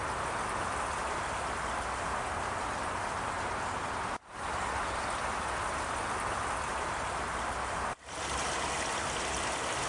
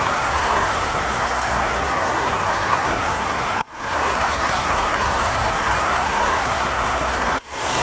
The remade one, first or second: second